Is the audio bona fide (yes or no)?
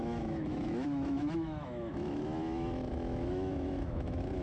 no